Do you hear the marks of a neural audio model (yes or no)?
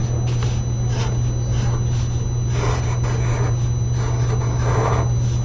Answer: no